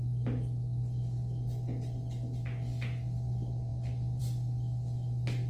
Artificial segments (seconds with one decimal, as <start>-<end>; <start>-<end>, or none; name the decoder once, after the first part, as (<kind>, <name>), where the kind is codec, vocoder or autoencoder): none